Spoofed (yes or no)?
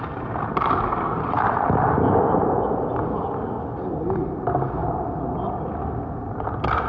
no